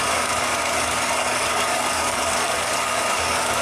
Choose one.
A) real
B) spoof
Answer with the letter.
B